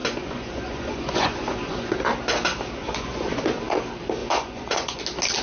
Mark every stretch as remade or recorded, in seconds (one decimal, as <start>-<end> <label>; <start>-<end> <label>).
0.0-1.9 remade; 1.9-2.8 recorded; 2.8-3.8 remade; 3.8-4.2 recorded; 4.2-5.0 remade; 5.0-5.4 recorded